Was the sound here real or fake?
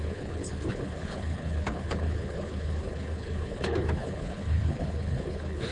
fake